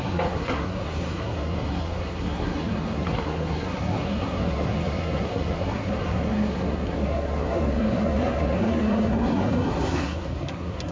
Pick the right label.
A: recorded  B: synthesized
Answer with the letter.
B